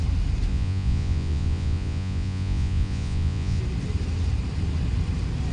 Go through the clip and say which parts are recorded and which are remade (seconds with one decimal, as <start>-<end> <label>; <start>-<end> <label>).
0.0-0.5 recorded; 0.5-3.6 remade; 3.6-5.5 recorded